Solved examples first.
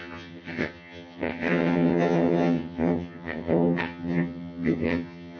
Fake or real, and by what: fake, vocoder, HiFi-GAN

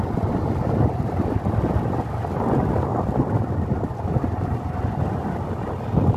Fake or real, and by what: real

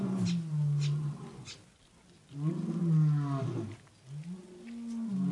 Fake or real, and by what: real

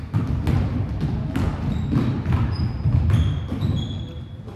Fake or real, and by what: real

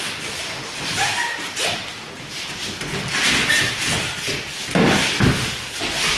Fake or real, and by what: real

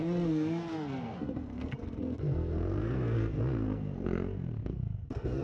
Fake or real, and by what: fake, codec, SNAC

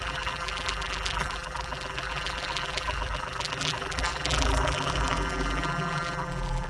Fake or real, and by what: fake, vocoder, BigVGAN v2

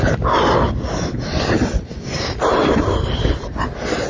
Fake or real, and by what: real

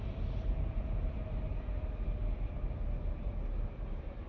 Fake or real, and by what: real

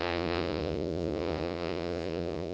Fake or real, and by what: fake, vocoder, Vocos